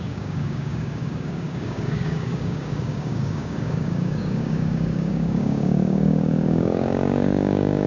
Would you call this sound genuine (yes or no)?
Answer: no